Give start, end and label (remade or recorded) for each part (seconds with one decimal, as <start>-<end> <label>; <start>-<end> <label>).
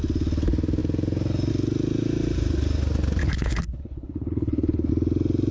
0.0-3.2 recorded; 3.2-4.9 remade; 4.9-5.5 recorded